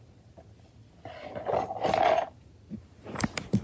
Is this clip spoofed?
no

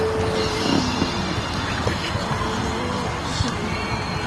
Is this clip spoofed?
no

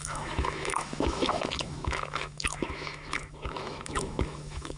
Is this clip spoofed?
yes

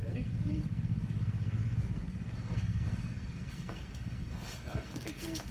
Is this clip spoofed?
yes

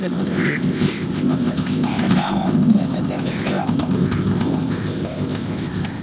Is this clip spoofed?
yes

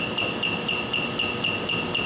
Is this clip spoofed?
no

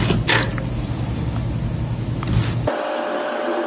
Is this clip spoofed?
no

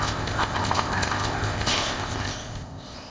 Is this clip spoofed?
yes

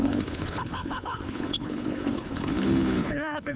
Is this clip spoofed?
yes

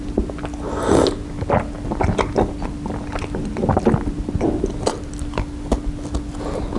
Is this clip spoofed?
no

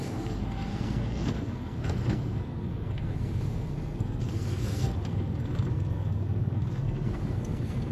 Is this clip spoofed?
yes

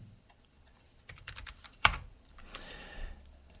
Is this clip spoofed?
yes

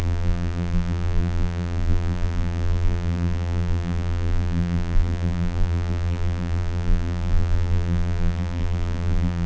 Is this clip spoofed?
yes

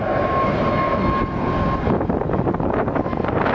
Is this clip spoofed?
no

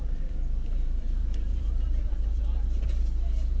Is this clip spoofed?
yes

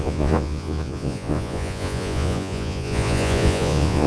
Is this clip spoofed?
yes